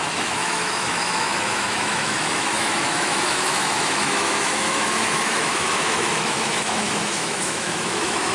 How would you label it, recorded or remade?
remade